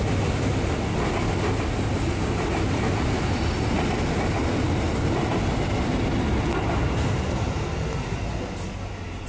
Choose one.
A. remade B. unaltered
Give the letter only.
B